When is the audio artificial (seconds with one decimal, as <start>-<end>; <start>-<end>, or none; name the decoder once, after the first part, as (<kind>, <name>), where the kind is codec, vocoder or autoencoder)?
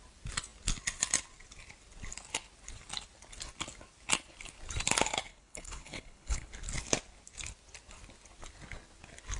5.3-6.5 (codec, HILCodec)